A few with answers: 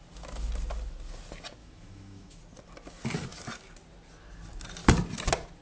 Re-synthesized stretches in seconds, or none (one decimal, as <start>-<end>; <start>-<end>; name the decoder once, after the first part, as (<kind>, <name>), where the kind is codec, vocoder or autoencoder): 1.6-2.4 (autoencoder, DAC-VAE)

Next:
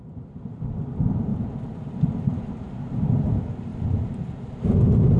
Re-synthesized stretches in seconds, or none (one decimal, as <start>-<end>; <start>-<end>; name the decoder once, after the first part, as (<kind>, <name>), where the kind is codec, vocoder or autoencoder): none

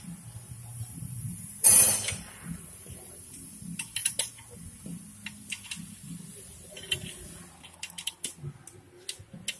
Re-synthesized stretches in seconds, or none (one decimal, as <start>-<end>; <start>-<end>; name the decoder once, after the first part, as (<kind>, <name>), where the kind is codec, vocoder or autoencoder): 0.7-3.5 (vocoder, BigVGAN v2)

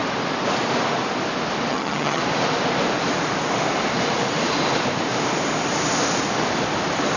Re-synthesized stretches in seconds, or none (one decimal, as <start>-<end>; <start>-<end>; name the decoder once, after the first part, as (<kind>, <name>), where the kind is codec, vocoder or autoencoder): 1.7-2.2 (vocoder, HiFi-GAN)